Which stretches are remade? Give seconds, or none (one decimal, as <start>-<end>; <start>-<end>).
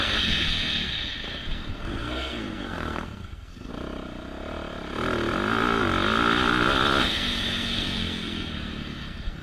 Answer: 0.0-3.7; 7.0-9.4